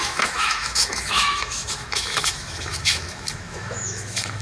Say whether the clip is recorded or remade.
remade